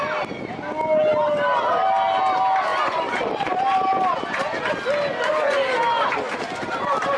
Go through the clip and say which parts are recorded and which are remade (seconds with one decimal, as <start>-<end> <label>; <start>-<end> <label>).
0.0-7.2 recorded